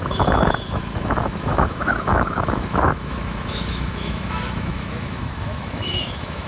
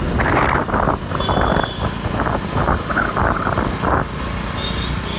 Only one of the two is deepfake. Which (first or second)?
first